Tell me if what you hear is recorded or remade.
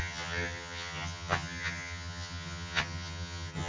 remade